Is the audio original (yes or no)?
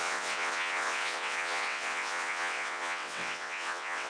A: no